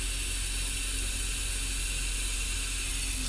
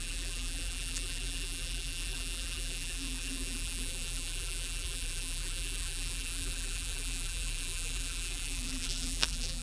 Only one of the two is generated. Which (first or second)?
second